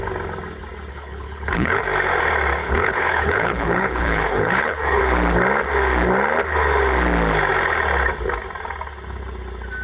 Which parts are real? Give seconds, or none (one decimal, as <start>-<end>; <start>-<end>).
0.0-0.9; 1.8-2.6; 5.0-9.8